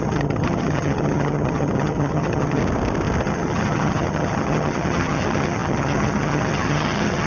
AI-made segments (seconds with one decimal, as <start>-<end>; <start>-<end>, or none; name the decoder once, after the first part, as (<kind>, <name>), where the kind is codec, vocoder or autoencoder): 0.0-2.6 (vocoder, HiFi-GAN); 3.2-7.3